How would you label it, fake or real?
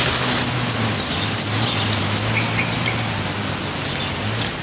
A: real